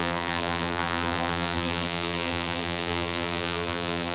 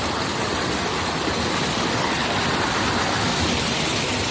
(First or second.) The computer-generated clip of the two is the first